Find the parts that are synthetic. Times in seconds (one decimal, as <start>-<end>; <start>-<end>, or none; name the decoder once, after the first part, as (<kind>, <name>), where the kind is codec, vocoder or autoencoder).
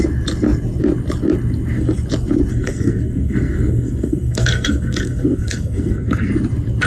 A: 2.5-6.3 (codec, SNAC)